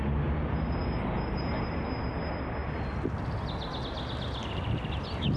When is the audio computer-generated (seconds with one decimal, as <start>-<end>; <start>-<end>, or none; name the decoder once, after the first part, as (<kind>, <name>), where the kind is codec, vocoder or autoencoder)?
none